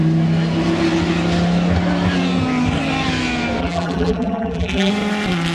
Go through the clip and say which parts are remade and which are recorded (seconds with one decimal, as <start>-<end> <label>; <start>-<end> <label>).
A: 0.0-3.6 recorded; 3.6-4.9 remade; 4.9-5.5 recorded